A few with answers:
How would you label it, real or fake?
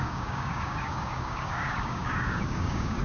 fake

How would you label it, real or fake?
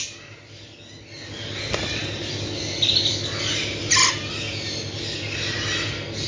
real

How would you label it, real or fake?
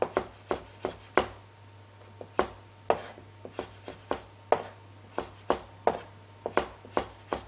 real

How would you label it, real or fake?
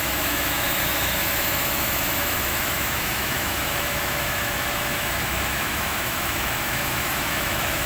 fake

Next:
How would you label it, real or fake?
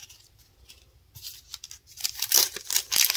real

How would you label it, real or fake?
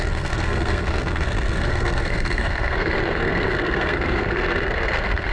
fake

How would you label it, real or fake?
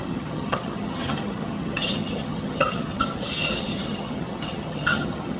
fake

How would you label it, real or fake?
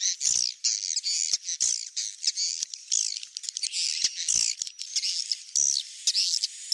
real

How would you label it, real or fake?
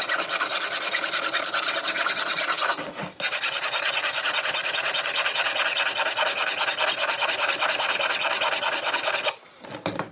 real